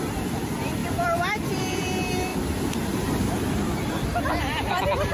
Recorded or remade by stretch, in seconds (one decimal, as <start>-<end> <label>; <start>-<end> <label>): 0.0-0.8 recorded; 0.8-1.8 remade; 1.8-2.3 recorded; 2.3-4.2 remade; 4.2-5.1 recorded